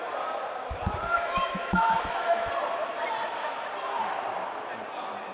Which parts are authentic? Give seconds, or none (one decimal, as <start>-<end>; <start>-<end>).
0.0-1.1; 2.5-5.3